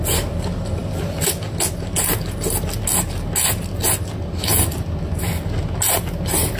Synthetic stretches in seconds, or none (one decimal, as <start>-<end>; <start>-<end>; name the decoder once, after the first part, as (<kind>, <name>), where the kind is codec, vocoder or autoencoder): none